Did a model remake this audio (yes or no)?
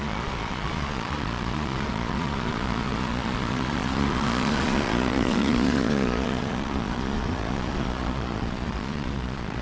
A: yes